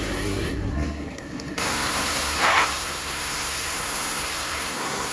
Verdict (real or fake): fake